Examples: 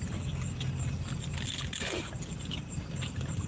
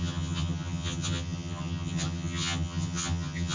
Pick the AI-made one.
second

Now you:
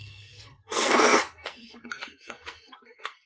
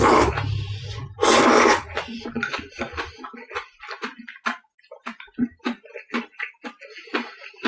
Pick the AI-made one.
first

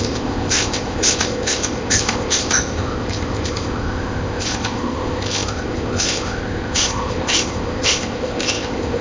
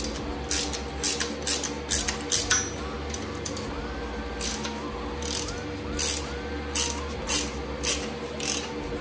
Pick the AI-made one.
first